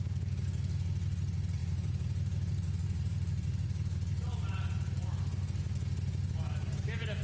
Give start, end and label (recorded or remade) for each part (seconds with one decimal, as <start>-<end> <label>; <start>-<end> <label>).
0.0-1.6 recorded; 1.6-5.2 remade; 5.2-7.2 recorded

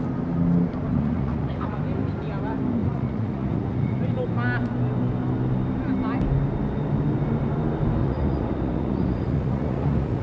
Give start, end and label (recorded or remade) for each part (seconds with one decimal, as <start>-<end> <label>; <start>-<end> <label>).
0.0-0.9 recorded; 0.9-1.8 remade; 1.8-2.8 recorded; 2.8-4.0 remade; 4.0-8.0 recorded; 8.0-10.2 remade

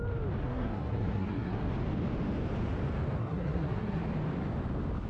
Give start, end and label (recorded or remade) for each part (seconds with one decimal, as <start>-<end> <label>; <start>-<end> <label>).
0.0-0.4 recorded; 0.4-1.7 remade; 1.7-3.2 recorded; 3.2-4.0 remade; 4.0-5.1 recorded

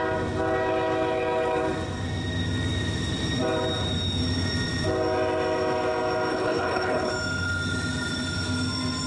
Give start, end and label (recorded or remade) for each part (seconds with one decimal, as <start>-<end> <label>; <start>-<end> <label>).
0.0-6.3 recorded; 6.3-7.1 remade; 7.1-9.1 recorded